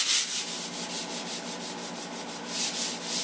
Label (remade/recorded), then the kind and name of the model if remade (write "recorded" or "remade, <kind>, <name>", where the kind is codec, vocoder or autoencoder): recorded